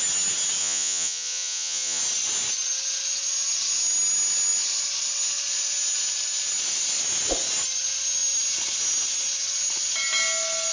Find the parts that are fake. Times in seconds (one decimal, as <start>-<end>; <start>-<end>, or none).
0.6-2.0